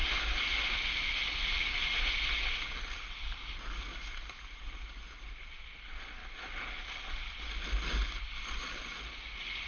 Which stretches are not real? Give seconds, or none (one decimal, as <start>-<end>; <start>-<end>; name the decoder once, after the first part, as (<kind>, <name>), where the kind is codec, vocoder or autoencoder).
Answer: none

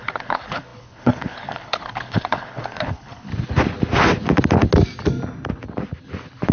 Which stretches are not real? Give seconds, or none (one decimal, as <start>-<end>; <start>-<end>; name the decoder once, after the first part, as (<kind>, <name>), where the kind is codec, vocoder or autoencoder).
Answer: 0.0-3.3 (codec, HILCodec)

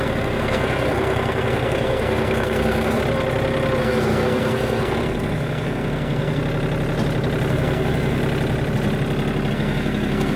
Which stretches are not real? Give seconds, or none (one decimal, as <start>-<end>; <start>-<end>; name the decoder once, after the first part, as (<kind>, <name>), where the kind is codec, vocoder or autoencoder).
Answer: 0.0-3.0 (codec, SNAC); 3.8-6.4; 7.5-8.2; 9.5-10.4

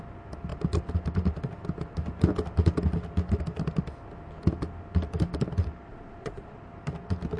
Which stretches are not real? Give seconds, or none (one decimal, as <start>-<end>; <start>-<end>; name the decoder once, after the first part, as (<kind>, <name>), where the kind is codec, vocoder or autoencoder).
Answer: 5.9-6.6 (vocoder, Vocos)